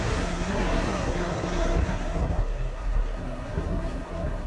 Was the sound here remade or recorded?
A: remade